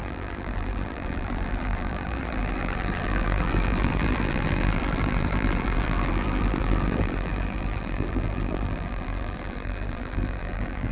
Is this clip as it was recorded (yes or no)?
no